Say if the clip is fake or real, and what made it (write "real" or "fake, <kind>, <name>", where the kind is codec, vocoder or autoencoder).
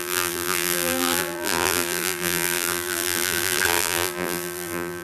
fake, vocoder, BigVGAN v2